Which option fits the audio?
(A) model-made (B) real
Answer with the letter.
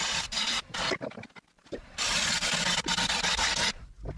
B